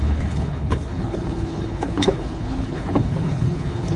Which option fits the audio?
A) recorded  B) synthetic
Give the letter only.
B